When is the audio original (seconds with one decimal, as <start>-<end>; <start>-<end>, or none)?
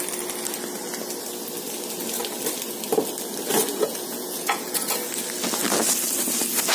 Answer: 0.0-3.7; 4.9-6.7